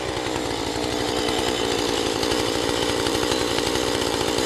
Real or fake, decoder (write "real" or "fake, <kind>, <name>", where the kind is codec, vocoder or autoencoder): fake, vocoder, BigVGAN v2